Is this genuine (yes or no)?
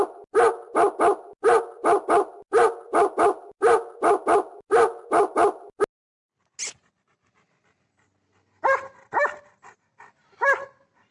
yes